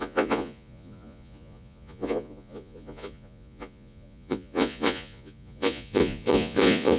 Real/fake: fake